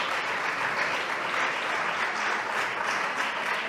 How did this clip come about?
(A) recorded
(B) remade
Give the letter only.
A